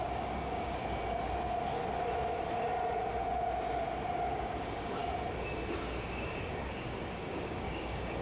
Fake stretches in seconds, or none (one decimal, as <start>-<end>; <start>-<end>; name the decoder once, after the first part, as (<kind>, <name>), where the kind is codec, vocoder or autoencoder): 0.0-0.8 (codec, DAC); 4.3-5.0; 5.7-8.2